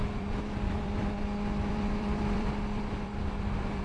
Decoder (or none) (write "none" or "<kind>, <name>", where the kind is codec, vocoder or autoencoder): vocoder, BigVGAN v2